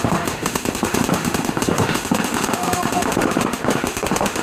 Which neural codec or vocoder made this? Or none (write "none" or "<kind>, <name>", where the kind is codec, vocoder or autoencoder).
autoencoder, DAC-VAE